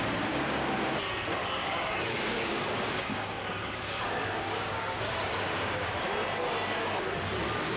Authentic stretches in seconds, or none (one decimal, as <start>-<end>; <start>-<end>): 0.0-1.4; 6.1-7.8